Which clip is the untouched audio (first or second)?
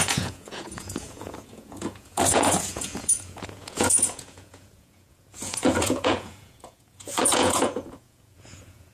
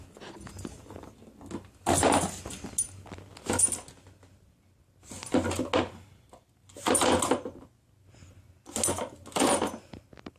second